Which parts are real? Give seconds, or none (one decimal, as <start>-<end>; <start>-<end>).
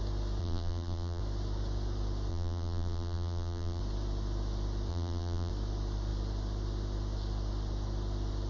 0.0-0.4; 1.2-2.3; 3.8-4.9; 5.5-8.5